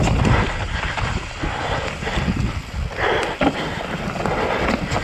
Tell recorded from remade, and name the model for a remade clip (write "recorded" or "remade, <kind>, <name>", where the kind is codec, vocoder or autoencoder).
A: recorded